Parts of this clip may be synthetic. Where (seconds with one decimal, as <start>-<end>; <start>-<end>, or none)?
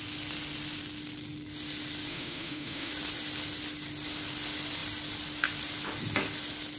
2.1-2.9